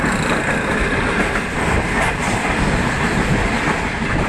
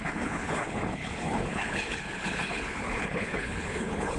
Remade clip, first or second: second